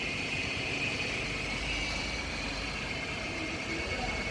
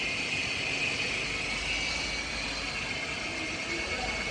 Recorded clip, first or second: second